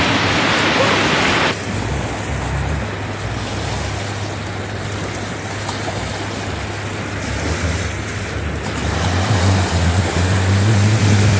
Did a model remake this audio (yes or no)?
no